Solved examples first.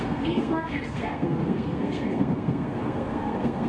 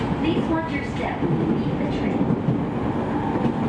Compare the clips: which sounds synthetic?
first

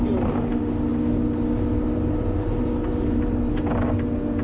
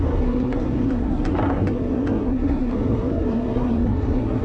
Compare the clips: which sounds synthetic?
second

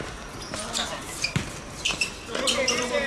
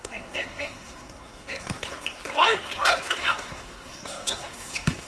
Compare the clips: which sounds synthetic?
second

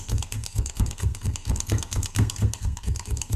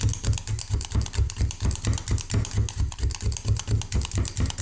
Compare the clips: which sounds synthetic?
first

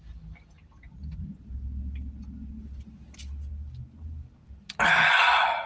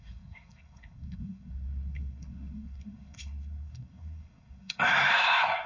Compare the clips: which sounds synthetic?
second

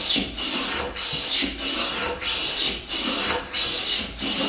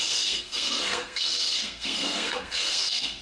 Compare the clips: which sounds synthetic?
second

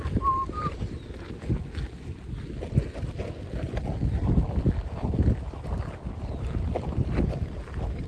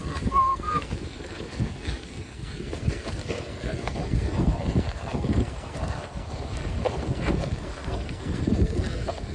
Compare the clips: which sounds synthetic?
second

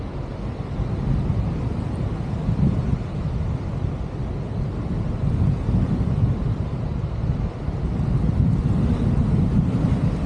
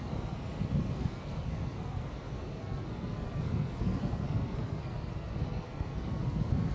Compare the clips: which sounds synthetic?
second